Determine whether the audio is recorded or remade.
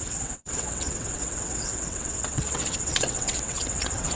remade